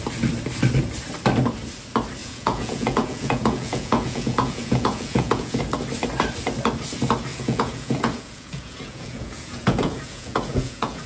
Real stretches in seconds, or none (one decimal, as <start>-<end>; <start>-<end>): 0.0-2.2; 5.6-7.3

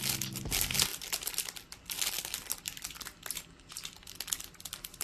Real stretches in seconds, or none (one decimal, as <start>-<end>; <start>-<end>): 0.0-5.0

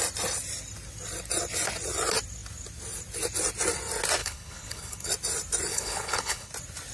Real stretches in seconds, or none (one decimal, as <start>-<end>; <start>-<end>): 0.0-4.2; 5.1-5.7; 6.5-6.9

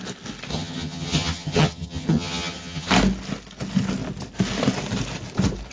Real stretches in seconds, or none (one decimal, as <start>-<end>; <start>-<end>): 0.0-0.5; 2.9-5.7